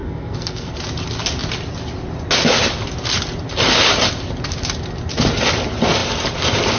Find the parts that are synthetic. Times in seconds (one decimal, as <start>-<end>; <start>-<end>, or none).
0.0-0.8